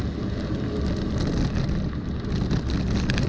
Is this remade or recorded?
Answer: recorded